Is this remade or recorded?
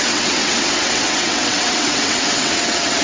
remade